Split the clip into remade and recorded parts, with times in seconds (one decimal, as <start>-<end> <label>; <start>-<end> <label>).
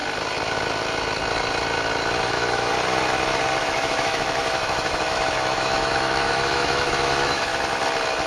0.0-2.2 recorded; 2.2-2.7 remade; 2.7-3.6 recorded; 3.6-7.5 remade; 7.5-8.3 recorded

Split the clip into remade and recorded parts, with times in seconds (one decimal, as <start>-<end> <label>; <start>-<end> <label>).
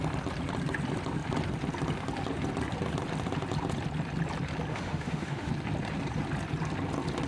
0.0-4.7 recorded; 4.7-5.5 remade; 5.5-7.3 recorded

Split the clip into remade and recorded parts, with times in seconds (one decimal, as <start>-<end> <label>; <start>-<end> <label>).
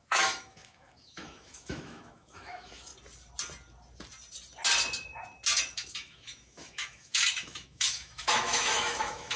0.0-2.9 remade; 2.9-5.7 recorded; 5.7-9.4 remade